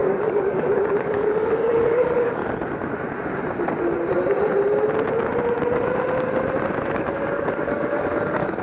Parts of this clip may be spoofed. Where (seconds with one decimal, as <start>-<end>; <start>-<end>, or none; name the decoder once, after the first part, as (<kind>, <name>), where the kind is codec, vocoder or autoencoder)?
0.0-2.4 (codec, DAC); 6.9-8.6